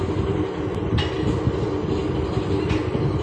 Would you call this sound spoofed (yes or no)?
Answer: no